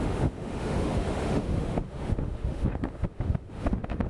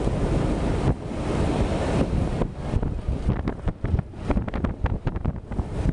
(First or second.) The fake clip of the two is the first